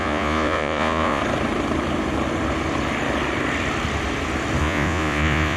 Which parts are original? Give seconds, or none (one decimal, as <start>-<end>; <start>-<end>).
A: 1.2-4.6